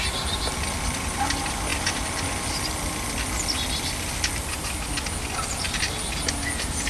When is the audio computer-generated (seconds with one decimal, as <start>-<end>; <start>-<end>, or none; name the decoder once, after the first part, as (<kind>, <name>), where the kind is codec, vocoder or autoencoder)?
none